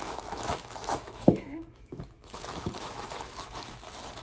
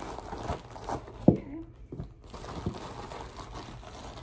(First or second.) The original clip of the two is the second